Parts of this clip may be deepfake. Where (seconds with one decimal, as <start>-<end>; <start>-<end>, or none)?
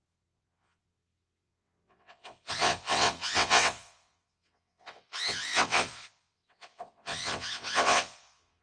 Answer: 0.0-8.6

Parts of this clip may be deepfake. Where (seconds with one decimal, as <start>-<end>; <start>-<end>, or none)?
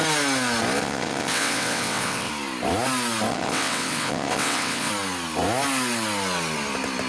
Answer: 0.8-2.3; 3.3-4.9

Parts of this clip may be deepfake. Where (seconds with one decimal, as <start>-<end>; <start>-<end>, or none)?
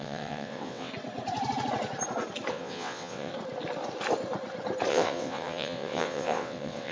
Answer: 0.0-0.9; 2.5-3.3; 4.9-6.9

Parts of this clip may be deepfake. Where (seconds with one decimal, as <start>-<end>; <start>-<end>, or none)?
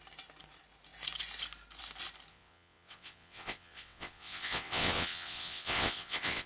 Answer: 2.3-6.5